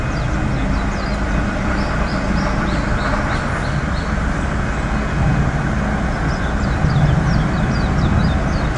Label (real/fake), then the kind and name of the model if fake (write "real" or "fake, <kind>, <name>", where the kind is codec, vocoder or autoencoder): real